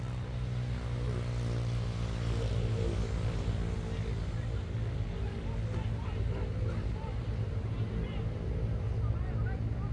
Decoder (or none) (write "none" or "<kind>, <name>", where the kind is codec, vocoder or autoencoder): none